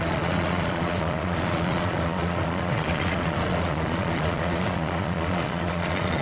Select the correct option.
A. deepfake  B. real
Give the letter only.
A